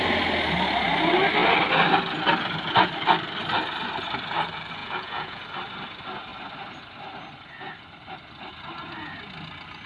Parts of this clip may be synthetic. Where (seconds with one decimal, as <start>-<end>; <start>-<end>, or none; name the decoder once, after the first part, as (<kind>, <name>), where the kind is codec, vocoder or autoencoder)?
4.8-5.4 (vocoder, Vocos)

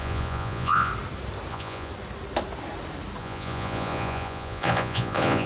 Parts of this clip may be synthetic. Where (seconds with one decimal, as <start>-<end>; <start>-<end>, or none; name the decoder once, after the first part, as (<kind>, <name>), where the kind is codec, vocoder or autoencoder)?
0.0-0.9 (vocoder, Vocos); 1.5-1.9; 3.2-5.5

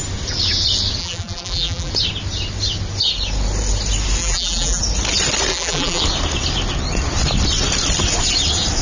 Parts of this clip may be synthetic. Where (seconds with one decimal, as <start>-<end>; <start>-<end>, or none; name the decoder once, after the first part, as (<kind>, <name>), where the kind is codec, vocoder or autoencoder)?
1.0-1.9 (vocoder, BigVGAN v2); 4.2-4.8; 5.5-6.0

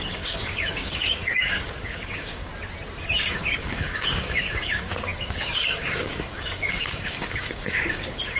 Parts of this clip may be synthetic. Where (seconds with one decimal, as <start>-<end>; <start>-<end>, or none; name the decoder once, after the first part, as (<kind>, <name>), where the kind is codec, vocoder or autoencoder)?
0.0-2.5 (codec, DAC); 3.3-8.4

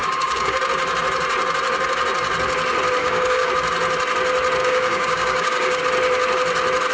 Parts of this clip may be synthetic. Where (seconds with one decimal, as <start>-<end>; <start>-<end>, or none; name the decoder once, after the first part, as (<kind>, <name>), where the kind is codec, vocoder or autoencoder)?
0.0-0.6 (codec, DAC); 3.0-3.5; 4.6-5.8

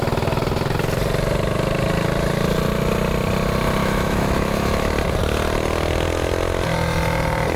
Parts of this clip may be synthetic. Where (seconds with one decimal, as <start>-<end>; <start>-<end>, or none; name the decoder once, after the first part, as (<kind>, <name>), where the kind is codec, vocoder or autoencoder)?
3.8-4.9 (autoencoder, DAC-VAE)

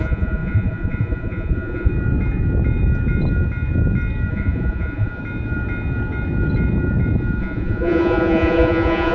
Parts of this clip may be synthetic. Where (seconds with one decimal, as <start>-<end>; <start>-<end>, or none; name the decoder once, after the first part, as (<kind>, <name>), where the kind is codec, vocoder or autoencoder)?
0.0-1.9 (vocoder, Vocos); 4.3-5.2; 7.4-9.1

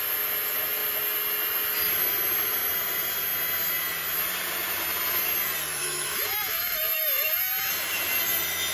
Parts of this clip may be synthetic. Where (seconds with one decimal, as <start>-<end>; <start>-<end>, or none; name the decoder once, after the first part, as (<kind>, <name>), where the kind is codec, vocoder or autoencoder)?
5.8-7.7 (autoencoder, DAC-VAE)